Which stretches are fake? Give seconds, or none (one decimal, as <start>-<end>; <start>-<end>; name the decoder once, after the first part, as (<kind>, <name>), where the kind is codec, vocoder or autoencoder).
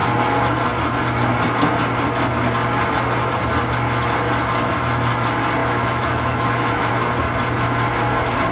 5.6-6.9 (autoencoder, DAC-VAE)